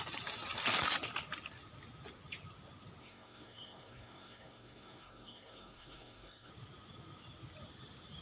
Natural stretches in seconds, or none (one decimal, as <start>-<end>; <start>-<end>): 0.0-3.0; 6.5-8.2